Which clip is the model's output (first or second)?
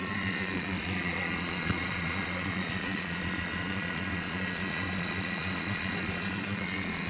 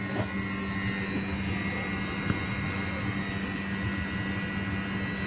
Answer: first